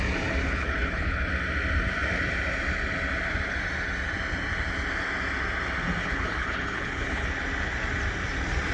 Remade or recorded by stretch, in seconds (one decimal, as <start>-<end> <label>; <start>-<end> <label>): 0.0-0.4 recorded; 0.4-1.3 remade; 1.3-6.0 recorded; 6.0-7.3 remade; 7.3-8.7 recorded